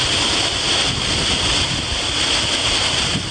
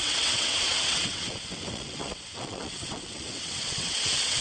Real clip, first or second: first